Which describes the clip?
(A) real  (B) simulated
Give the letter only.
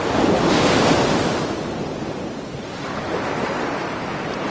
A